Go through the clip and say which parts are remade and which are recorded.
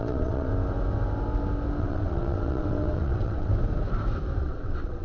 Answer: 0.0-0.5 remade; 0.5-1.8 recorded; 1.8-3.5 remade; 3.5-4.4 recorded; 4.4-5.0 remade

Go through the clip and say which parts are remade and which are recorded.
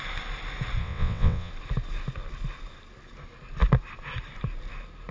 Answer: 0.0-0.8 recorded; 0.8-1.5 remade; 1.5-5.1 recorded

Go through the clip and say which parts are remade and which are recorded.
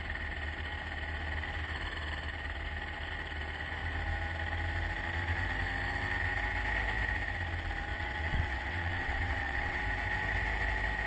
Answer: 0.0-7.9 recorded; 7.9-9.8 remade; 9.8-11.1 recorded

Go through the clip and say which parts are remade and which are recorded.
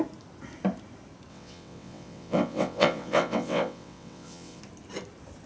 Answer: 0.0-1.3 recorded; 1.3-4.6 remade; 4.6-5.5 recorded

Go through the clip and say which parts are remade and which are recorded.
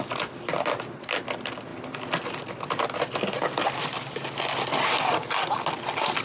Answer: 0.0-6.2 recorded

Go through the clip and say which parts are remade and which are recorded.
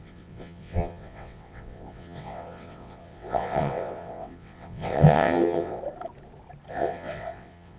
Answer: 0.0-5.8 remade; 5.8-6.7 recorded; 6.7-7.8 remade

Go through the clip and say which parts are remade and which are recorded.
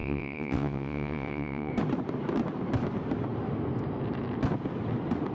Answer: 0.0-1.7 remade; 1.7-5.3 recorded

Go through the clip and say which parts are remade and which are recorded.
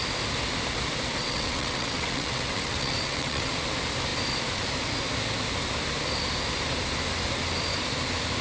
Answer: 0.0-1.2 recorded; 1.2-3.5 remade; 3.5-8.4 recorded